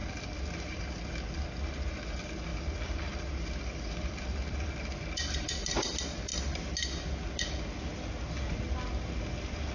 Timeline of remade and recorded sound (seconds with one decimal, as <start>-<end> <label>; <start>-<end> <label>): 0.0-0.8 remade; 0.8-2.5 recorded; 2.5-4.7 remade; 4.7-9.7 recorded